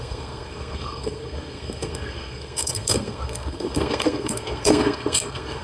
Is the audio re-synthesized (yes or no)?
yes